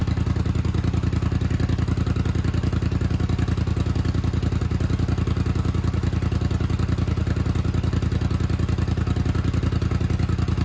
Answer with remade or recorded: recorded